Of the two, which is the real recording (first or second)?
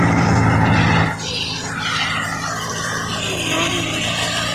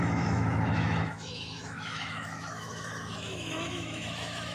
first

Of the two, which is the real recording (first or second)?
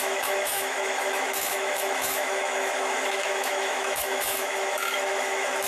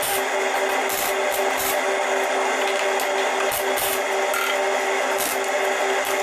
second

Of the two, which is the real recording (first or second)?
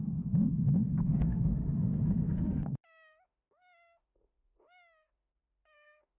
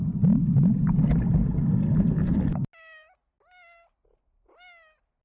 second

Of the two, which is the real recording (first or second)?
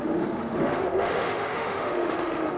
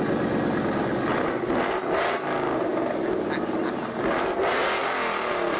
second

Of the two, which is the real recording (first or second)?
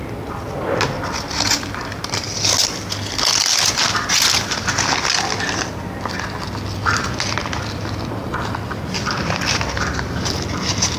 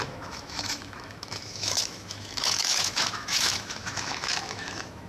first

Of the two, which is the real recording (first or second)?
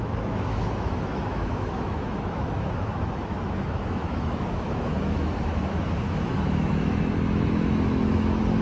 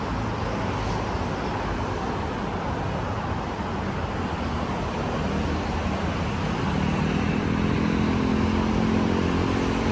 second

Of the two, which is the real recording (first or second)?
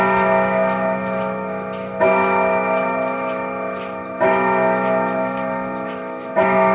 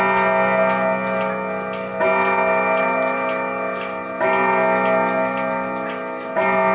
second